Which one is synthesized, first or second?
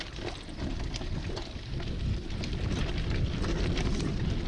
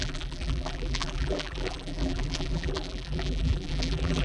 second